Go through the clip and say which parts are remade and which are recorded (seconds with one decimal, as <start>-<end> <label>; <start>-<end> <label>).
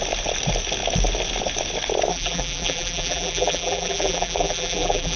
0.0-2.1 recorded; 2.1-5.2 remade